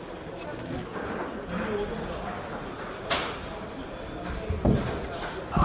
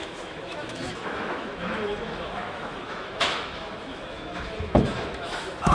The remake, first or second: second